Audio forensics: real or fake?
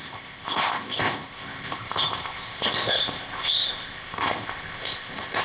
fake